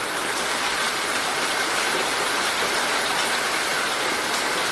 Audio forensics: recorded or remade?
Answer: recorded